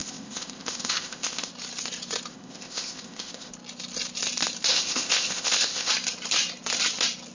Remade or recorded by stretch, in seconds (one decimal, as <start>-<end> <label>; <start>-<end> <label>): 0.0-1.5 remade; 1.5-2.3 recorded; 2.3-3.5 remade; 3.5-4.7 recorded; 4.7-5.9 remade; 5.9-7.3 recorded